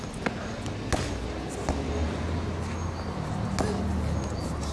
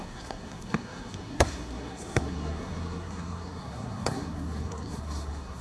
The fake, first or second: second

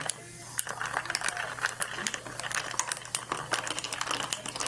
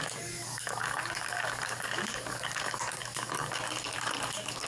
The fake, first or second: second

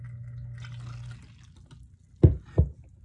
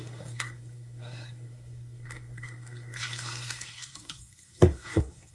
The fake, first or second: second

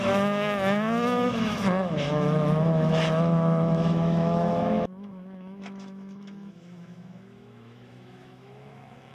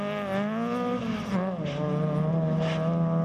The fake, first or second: first